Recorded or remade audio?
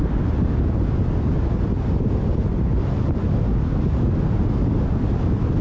recorded